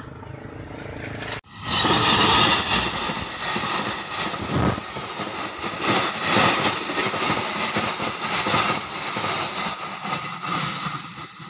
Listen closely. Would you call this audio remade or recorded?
recorded